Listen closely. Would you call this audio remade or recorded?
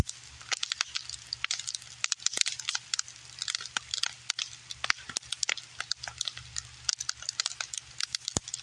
recorded